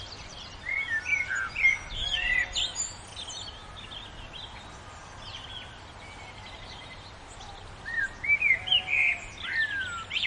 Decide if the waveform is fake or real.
real